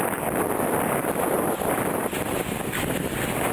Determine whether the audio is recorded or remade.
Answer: recorded